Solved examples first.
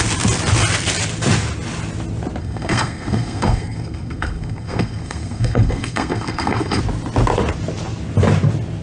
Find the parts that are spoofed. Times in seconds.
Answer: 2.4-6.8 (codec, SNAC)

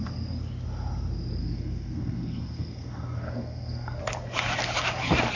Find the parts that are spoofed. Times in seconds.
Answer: 1.4-4.0 (codec, SNAC)

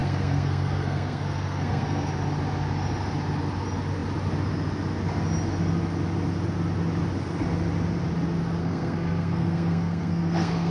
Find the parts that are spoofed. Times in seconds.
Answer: 0.0-2.1 (codec, SNAC); 8.6-10.7

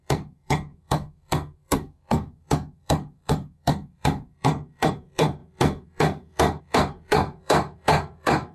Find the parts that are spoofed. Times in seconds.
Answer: 0.0-8.5 (codec, SNAC)